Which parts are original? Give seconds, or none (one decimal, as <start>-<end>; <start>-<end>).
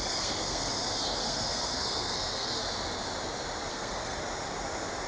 0.7-1.2; 2.6-3.7; 4.2-5.1